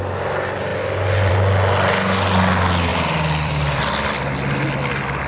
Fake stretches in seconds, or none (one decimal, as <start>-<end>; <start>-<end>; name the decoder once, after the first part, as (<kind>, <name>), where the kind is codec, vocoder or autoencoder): 2.9-3.8 (vocoder, BigVGAN v2)